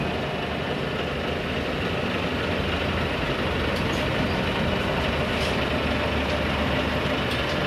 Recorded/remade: recorded